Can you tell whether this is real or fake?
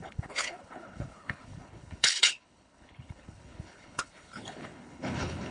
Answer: fake